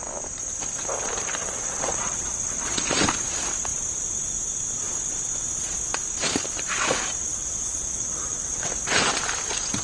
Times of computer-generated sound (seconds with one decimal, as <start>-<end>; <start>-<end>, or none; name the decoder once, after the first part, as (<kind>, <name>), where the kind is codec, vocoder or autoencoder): 1.4-2.8 (vocoder, WaveNeXt); 7.3-8.7